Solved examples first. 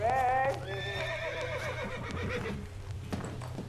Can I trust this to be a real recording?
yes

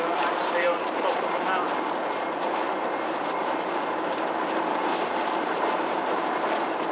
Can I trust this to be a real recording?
no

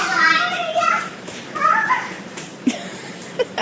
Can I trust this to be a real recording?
no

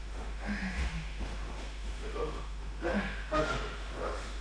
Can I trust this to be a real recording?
no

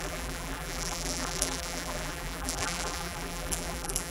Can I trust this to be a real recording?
no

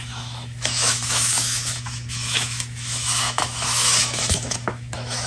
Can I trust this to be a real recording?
no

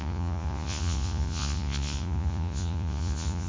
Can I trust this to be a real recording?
no